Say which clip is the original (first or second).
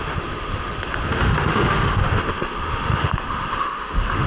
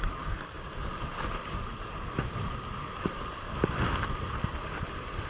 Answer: second